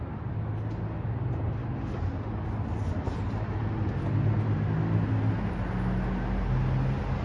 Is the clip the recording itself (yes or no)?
yes